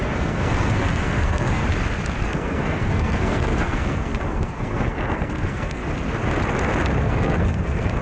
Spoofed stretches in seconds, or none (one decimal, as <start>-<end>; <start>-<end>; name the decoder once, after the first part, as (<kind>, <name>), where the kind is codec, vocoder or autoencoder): 0.0-1.6 (codec, SNAC); 2.2-5.8; 7.0-8.0